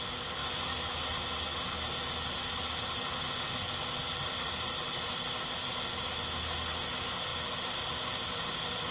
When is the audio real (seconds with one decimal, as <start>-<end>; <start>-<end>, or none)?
0.0-0.4; 1.0-8.9